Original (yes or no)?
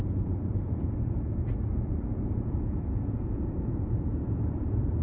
no